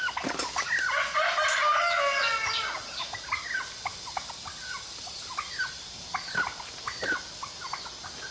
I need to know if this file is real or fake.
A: real